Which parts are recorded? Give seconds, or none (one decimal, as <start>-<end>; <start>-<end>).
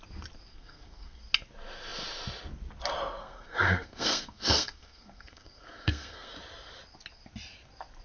0.0-0.5; 1.2-3.2; 6.3-8.0